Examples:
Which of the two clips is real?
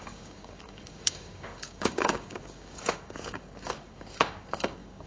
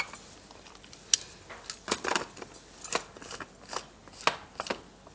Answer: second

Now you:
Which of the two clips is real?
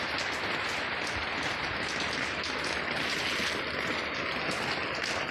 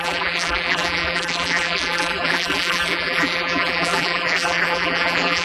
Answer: first